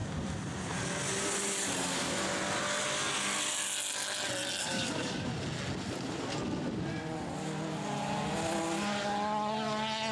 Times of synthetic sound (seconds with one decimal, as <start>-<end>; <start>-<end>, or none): 4.6-5.3